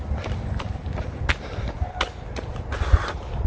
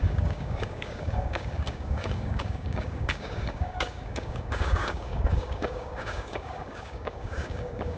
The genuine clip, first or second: first